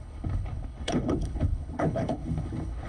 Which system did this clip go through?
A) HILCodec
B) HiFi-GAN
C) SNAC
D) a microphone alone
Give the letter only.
A